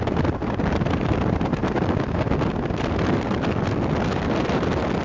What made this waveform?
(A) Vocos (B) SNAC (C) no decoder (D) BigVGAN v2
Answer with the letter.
C